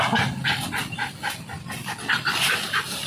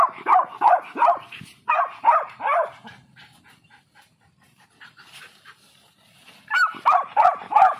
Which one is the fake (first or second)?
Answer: second